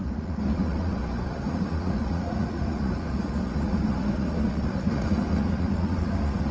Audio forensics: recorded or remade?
remade